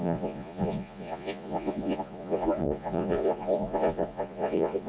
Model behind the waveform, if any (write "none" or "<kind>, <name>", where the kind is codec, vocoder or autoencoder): vocoder, Vocos